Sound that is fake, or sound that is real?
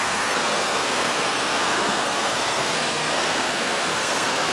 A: fake